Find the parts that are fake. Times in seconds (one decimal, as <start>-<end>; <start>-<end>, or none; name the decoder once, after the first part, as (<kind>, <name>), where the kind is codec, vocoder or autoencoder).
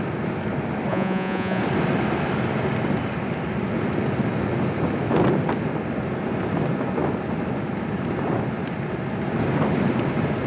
0.9-1.6 (vocoder, Vocos)